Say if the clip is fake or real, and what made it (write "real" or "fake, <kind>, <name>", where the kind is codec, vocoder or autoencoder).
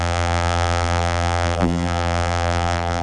fake, vocoder, BigVGAN v2